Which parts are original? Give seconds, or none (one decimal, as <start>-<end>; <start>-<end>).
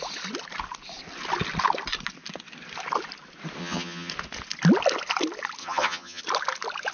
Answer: 0.0-3.6; 4.1-5.6; 6.2-6.9